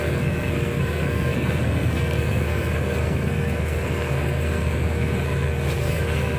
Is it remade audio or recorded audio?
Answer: remade